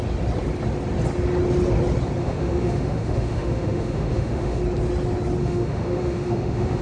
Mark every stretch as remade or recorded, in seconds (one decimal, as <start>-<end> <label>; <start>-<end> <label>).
0.0-2.2 recorded; 2.2-4.6 remade; 4.6-5.4 recorded; 5.4-6.8 remade